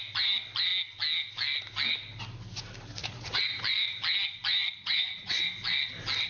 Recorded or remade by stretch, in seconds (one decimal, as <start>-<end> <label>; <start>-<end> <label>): 0.0-3.0 recorded; 3.0-3.6 remade; 3.6-4.6 recorded; 4.6-5.4 remade; 5.4-6.3 recorded